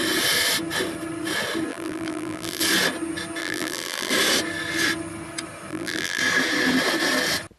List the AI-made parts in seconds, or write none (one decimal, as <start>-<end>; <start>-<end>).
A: 1.7-2.6; 3.4-4.1; 5.7-6.2